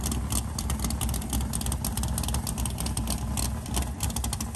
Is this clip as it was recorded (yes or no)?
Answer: yes